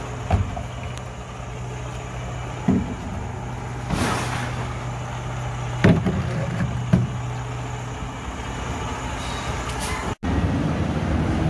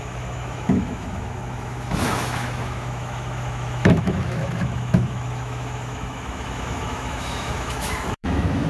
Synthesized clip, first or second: second